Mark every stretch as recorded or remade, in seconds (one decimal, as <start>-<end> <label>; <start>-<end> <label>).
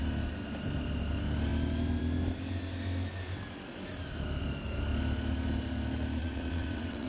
0.0-6.2 recorded; 6.2-7.1 remade